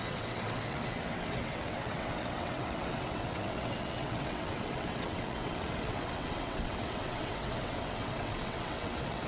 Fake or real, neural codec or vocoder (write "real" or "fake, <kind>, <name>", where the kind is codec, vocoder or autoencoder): fake, vocoder, WaveNeXt